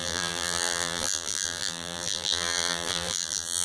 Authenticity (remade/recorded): remade